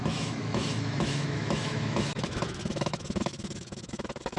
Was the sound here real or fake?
fake